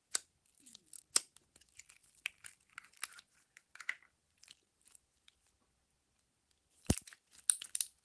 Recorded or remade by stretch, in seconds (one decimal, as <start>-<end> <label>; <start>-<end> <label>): 0.0-8.0 recorded